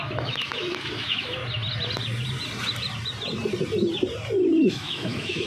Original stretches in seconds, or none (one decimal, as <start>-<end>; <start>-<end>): 1.4-4.7

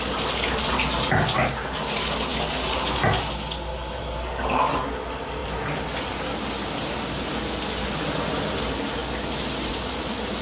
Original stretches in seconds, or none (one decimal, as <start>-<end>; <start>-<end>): 0.0-10.4

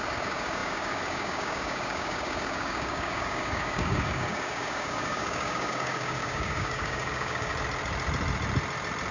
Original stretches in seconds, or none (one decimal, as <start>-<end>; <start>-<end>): 7.5-9.1

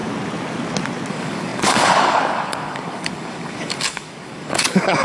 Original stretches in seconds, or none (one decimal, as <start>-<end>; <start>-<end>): 0.0-1.1

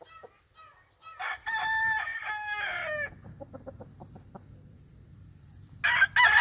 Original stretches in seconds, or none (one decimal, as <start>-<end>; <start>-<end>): 0.0-6.4

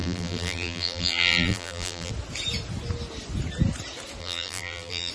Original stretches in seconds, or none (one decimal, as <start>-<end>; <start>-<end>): 2.1-4.2

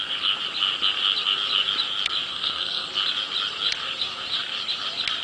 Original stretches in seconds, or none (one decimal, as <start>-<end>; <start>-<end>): 0.0-2.3; 2.9-5.2